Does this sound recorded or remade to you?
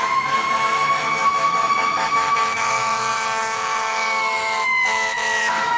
remade